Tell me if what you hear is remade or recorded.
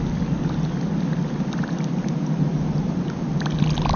recorded